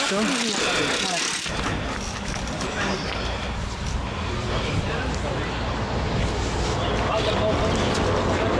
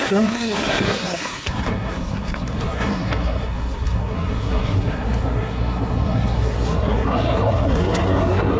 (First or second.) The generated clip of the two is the second